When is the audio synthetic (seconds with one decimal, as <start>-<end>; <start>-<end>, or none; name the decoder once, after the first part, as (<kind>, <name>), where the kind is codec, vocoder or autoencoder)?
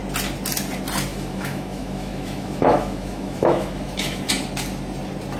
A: 1.1-4.3 (autoencoder, DAC-VAE)